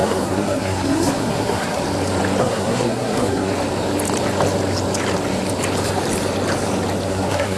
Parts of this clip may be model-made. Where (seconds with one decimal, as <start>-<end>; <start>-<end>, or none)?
0.0-1.8; 2.4-3.5; 7.1-7.6